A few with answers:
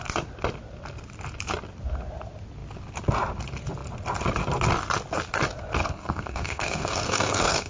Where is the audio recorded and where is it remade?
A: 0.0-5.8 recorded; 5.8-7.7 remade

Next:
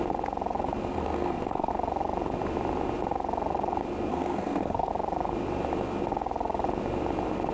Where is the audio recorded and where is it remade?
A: 0.0-0.9 recorded; 0.9-1.7 remade; 1.7-4.1 recorded; 4.1-4.9 remade; 4.9-7.5 recorded

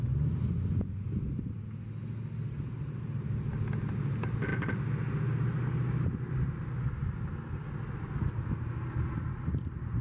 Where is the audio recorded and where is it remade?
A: 0.0-10.0 recorded

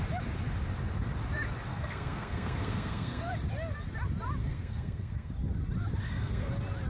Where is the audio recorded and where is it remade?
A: 0.0-1.7 recorded; 1.7-3.3 remade; 3.3-4.4 recorded; 4.4-5.3 remade; 5.3-6.0 recorded; 6.0-6.5 remade; 6.5-6.9 recorded

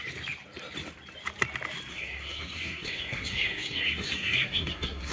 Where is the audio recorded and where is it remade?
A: 0.0-1.9 recorded; 1.9-5.1 remade

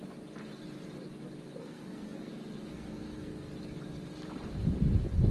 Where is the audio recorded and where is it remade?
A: 0.0-1.6 recorded; 1.6-2.3 remade; 2.3-2.7 recorded; 2.7-3.5 remade; 3.5-5.3 recorded